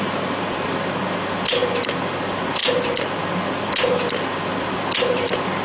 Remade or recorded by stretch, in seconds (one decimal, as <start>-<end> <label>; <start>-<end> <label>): 0.0-5.6 recorded